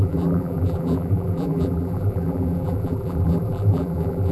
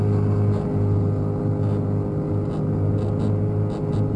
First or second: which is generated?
first